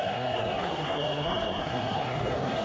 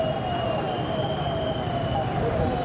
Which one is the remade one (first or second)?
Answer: first